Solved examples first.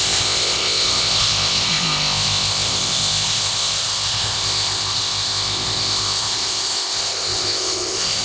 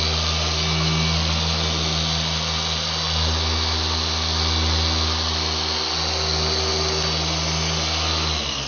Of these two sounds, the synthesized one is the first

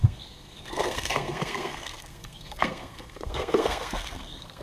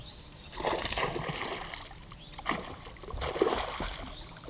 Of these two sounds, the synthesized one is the first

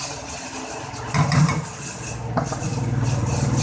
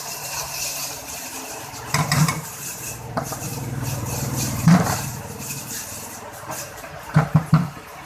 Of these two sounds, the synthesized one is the second